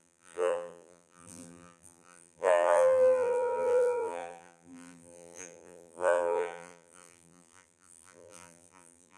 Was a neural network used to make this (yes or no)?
yes